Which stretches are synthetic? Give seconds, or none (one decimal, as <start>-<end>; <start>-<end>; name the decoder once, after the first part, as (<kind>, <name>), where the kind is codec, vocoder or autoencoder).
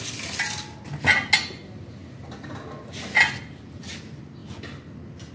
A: none